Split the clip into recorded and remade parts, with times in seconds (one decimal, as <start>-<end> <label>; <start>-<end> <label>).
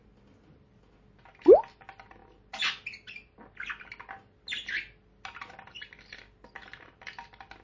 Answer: 0.0-7.6 recorded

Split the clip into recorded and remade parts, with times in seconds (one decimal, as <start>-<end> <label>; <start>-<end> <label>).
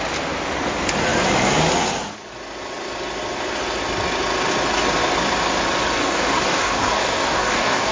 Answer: 0.0-6.0 recorded; 6.0-7.9 remade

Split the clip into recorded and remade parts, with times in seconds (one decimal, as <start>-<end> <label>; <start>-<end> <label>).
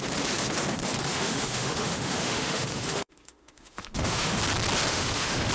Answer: 0.0-1.1 recorded; 1.1-4.4 remade; 4.4-4.9 recorded; 4.9-5.5 remade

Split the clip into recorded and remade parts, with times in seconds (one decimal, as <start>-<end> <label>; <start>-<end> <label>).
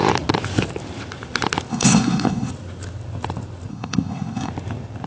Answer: 0.0-1.7 recorded; 1.7-2.5 remade; 2.5-3.7 recorded; 3.7-4.5 remade; 4.5-5.1 recorded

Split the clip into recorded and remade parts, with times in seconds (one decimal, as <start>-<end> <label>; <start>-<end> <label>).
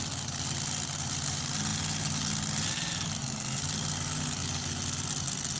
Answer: 0.0-5.6 recorded